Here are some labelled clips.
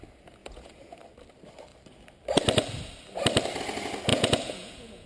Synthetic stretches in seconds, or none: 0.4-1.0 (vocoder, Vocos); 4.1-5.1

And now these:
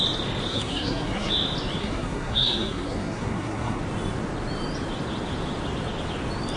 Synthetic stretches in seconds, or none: 0.5-1.3 (codec, SNAC); 1.8-3.8

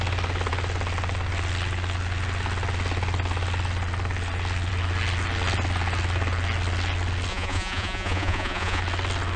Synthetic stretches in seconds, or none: 7.3-8.8 (vocoder, Vocos)

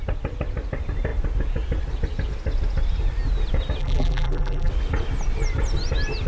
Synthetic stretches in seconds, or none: 3.8-4.7 (vocoder, BigVGAN v2)

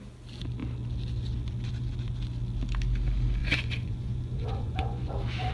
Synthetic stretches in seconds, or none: 3.4-5.1 (vocoder, Vocos)